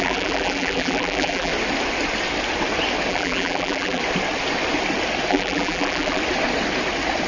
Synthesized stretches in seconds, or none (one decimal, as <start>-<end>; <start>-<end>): 0.0-1.5; 3.1-4.0; 5.3-6.2